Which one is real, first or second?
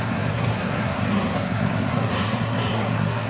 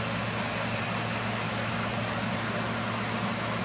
second